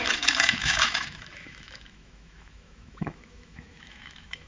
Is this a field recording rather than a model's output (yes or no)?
no